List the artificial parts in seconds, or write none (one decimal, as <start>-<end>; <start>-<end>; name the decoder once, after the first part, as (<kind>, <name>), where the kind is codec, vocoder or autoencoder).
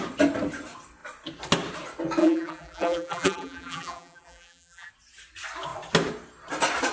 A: 2.2-4.9 (vocoder, BigVGAN v2)